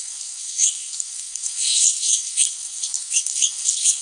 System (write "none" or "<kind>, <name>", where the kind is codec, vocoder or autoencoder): codec, SNAC